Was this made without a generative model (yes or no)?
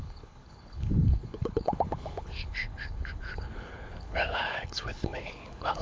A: no